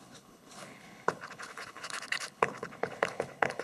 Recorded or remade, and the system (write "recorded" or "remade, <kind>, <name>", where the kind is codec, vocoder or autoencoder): remade, codec, HILCodec